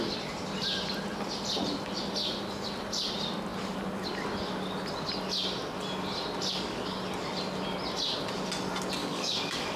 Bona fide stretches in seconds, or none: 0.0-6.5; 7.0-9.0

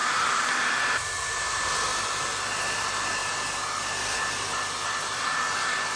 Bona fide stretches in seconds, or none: 0.7-6.0